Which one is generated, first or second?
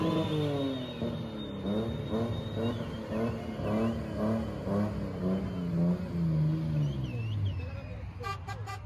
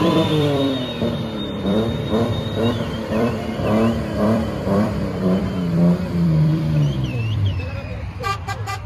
second